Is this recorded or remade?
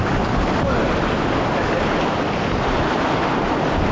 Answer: recorded